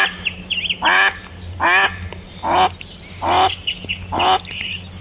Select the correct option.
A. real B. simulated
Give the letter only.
A